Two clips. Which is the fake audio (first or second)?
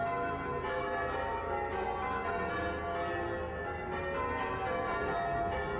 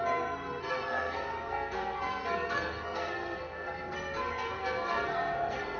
second